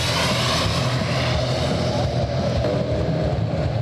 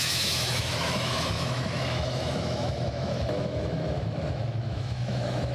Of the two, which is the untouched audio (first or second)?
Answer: first